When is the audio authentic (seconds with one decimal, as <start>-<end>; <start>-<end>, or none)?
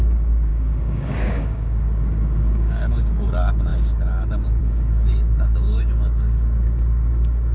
none